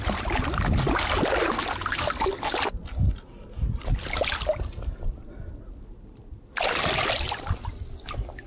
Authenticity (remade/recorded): recorded